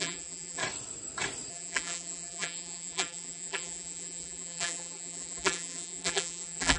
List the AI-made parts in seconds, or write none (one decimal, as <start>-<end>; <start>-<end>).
0.0-0.6; 1.5-6.8